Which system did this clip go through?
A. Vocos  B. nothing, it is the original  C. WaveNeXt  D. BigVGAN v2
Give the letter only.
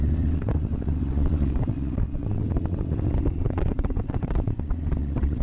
C